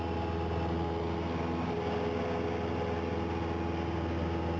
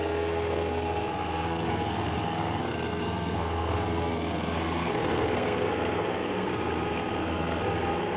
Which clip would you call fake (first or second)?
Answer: second